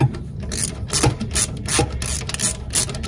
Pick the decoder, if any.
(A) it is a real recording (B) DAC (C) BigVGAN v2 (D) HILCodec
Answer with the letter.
A